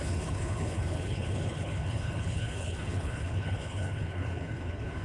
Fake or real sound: fake